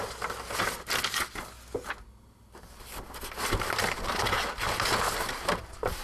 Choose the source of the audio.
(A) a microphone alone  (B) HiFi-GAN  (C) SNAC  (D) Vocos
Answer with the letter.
A